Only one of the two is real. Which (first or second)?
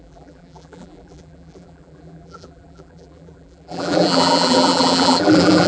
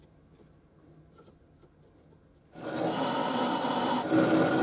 second